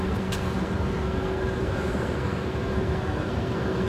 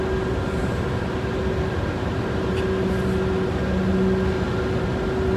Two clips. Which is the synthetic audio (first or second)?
first